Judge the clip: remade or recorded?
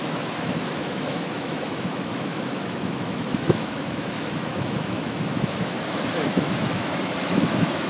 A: remade